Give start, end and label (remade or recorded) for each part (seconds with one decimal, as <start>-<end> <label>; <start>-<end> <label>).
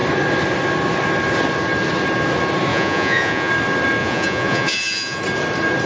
0.0-2.7 recorded; 2.7-3.5 remade; 3.5-4.0 recorded; 4.0-5.2 remade; 5.2-5.9 recorded